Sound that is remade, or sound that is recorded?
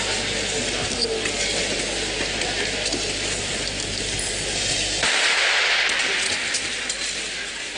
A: recorded